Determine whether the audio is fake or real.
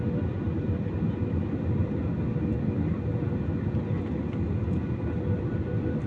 real